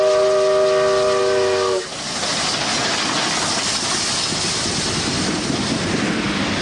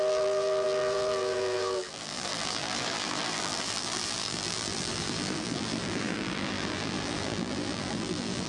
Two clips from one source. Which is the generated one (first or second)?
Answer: second